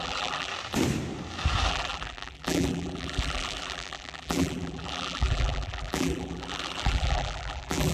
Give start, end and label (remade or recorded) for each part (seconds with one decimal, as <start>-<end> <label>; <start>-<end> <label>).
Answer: 0.0-0.5 remade; 0.5-1.7 recorded; 1.7-7.9 remade